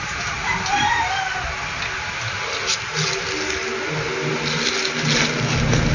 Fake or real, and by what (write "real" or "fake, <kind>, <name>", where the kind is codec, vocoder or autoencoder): real